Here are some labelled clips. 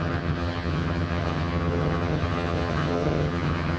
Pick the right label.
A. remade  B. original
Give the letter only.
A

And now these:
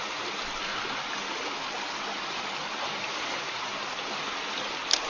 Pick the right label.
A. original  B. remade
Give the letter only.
A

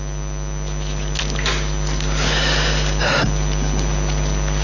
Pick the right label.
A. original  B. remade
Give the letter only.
A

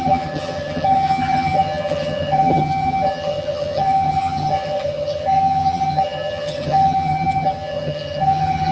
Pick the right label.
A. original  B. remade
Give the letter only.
B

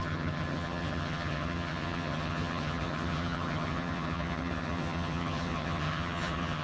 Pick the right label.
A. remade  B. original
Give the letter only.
A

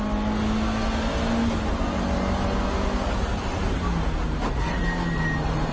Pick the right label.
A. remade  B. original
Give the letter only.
B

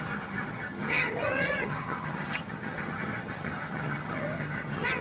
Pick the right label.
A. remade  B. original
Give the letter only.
A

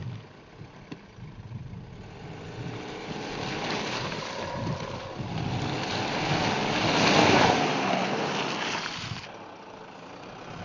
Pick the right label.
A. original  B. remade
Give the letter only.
A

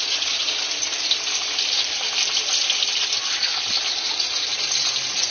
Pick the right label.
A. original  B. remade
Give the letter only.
A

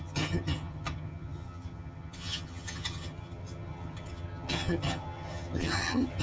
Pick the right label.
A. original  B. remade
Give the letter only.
B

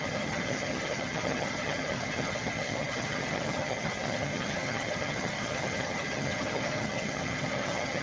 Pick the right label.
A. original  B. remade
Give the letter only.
B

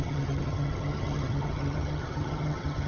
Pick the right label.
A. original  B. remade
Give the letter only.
B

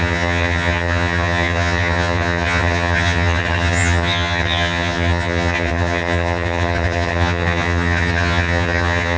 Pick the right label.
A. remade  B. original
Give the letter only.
A